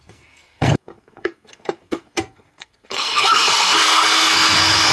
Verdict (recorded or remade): remade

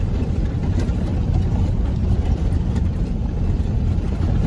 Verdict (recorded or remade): remade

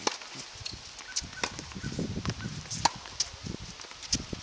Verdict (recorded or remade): recorded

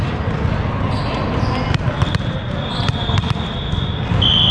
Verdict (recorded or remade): recorded